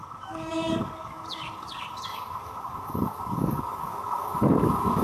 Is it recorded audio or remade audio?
remade